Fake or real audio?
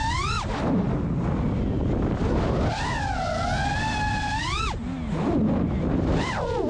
real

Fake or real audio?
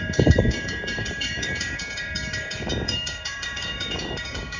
fake